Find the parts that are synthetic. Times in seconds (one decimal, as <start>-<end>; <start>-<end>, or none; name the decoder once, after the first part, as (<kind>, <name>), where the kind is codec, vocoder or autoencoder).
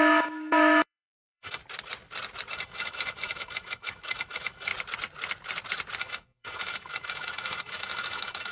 0.0-1.6 (autoencoder, DAC-VAE); 2.5-4.7; 6.0-8.5